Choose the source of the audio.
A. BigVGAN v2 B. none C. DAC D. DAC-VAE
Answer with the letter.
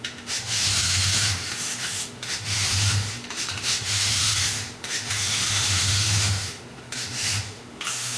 D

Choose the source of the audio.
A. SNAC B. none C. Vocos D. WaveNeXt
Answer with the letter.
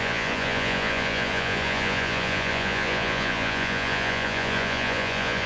C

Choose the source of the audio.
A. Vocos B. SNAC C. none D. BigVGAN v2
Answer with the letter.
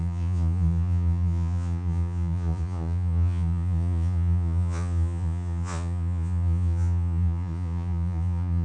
A